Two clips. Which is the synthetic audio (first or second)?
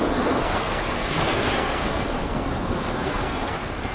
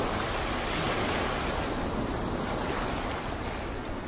first